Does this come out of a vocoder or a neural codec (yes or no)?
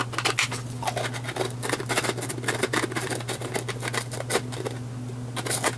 no